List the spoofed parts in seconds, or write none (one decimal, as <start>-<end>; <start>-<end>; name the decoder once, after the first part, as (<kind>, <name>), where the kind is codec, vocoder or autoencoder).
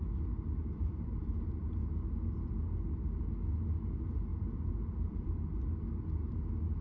0.6-1.7 (vocoder, BigVGAN v2); 4.3-5.4